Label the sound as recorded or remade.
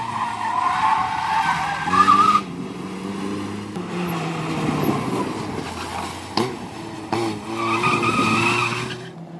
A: recorded